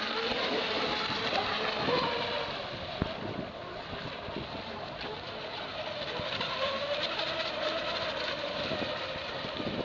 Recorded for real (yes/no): yes